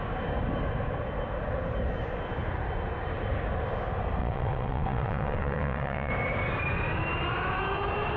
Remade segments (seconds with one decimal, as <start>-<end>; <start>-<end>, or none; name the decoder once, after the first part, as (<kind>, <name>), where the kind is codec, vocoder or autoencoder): 4.2-6.1 (vocoder, WaveNeXt)